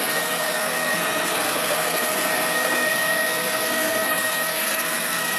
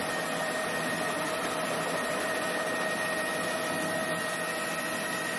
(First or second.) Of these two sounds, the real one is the second